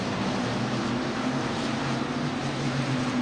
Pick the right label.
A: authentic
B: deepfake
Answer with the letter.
B